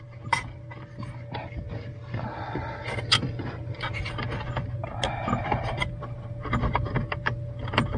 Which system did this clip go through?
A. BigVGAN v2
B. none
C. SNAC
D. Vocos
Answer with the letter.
B